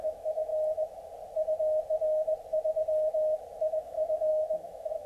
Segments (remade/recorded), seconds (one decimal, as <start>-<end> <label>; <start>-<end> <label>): 0.0-0.5 remade; 0.5-3.6 recorded; 3.6-5.1 remade